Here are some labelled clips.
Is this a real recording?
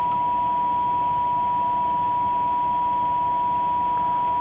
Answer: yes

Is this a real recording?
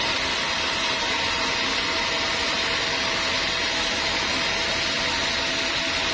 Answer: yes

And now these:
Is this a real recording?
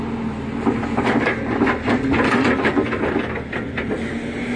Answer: yes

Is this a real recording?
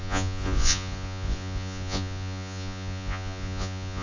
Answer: no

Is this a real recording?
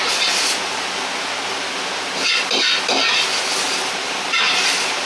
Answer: yes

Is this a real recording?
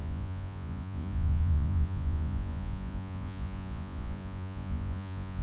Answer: no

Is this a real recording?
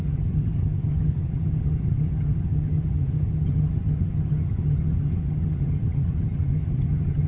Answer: no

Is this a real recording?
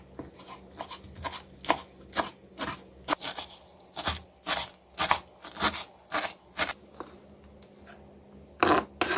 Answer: yes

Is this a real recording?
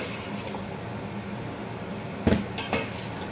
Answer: yes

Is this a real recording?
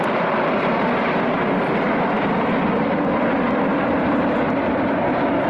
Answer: yes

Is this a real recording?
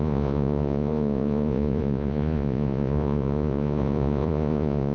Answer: no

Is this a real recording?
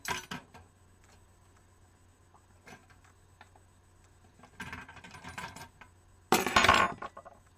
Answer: yes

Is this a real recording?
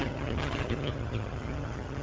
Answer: no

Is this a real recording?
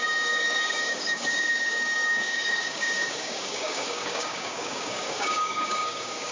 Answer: no